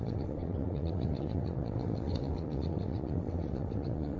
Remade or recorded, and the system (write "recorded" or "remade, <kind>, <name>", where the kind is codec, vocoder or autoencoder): remade, vocoder, WaveNeXt